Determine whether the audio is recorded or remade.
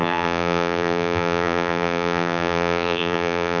remade